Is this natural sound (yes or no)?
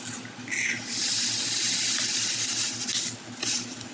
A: yes